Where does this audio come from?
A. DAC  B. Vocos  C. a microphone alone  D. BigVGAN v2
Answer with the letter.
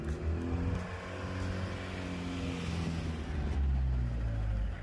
C